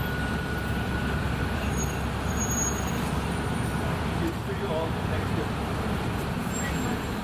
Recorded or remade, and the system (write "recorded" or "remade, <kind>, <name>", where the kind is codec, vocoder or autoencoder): remade, vocoder, BigVGAN v2